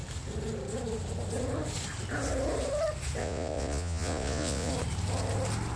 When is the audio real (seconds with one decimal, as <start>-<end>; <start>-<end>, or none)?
0.0-3.2; 4.7-5.8